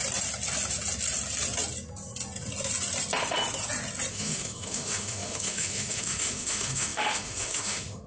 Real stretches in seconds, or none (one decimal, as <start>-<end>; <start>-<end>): 0.0-4.1